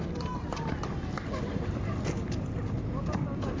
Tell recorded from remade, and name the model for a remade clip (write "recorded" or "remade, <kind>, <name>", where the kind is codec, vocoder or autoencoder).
recorded